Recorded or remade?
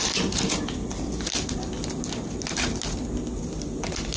recorded